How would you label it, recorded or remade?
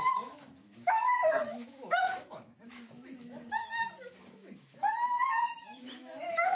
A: remade